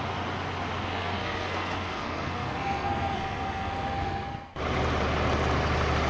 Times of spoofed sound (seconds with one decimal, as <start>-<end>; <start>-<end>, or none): 0.9-4.6